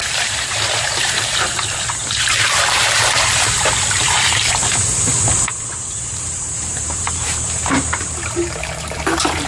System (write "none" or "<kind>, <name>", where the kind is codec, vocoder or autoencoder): vocoder, BigVGAN v2